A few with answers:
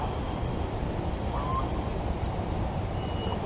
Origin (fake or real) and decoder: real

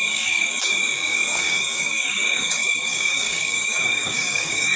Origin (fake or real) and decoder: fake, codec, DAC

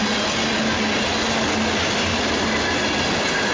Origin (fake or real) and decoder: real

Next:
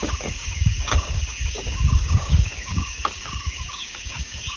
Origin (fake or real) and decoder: fake, codec, DAC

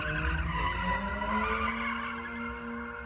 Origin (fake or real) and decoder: real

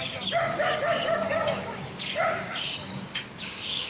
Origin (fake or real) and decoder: fake, codec, DAC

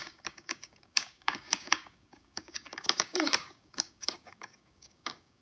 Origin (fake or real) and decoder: fake, codec, DAC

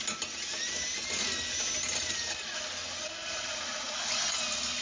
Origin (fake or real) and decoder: real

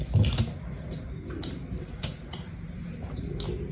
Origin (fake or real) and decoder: real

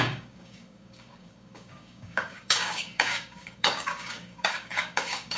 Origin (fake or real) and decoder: fake, codec, DAC